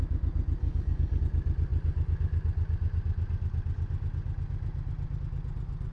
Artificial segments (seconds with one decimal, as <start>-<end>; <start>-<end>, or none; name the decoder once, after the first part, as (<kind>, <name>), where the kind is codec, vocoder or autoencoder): 0.6-1.2 (codec, DAC)